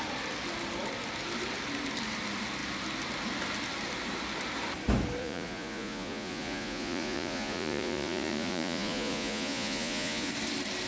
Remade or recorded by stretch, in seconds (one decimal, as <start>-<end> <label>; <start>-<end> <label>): 0.0-5.2 recorded; 5.2-10.3 remade; 10.3-10.9 recorded